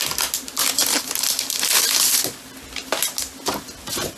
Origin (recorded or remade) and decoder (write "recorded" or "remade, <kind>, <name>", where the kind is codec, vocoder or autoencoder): recorded